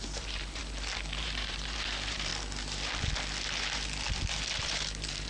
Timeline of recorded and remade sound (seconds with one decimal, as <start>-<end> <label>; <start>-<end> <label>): 0.0-0.6 remade; 0.6-1.2 recorded; 1.2-2.3 remade; 2.3-4.6 recorded; 4.6-5.3 remade